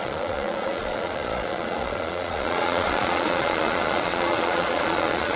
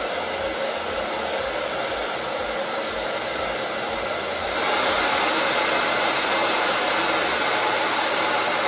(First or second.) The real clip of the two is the second